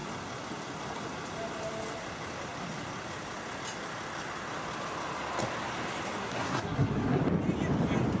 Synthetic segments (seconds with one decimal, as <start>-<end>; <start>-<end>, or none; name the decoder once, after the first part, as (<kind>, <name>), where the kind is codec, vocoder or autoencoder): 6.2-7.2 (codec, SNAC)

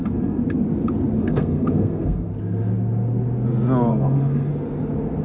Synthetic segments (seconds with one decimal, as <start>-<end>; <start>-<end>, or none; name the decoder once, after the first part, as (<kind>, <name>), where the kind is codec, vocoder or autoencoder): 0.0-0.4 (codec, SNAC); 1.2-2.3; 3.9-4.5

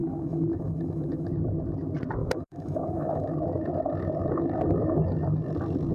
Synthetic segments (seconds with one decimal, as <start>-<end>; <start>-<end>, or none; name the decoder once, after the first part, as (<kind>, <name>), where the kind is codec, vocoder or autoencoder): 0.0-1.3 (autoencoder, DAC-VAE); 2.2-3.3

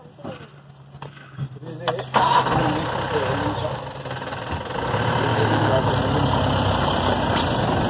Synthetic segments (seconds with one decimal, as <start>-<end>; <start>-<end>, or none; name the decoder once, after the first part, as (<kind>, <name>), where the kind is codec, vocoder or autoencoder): 5.3-5.9 (codec, DAC)